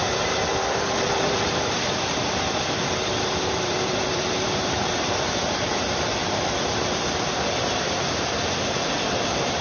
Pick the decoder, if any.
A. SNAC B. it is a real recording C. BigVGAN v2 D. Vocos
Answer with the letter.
C